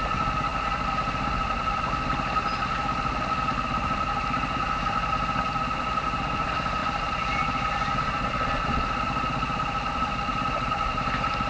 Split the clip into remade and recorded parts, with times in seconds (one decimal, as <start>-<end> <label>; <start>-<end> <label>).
0.0-11.5 remade

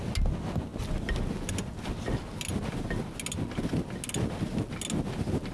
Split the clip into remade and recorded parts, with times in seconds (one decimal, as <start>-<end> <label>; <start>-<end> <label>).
0.0-5.5 recorded

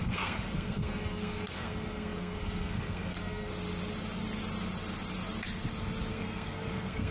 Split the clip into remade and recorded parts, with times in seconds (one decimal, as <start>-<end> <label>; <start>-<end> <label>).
0.0-3.5 remade; 3.5-6.1 recorded; 6.1-7.1 remade

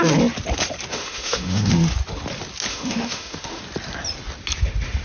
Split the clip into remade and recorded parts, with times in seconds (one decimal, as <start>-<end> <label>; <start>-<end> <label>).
0.0-0.9 recorded; 0.9-1.7 remade; 1.7-2.7 recorded; 2.7-3.6 remade; 3.6-5.0 recorded